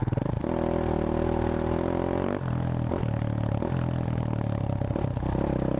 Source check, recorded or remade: recorded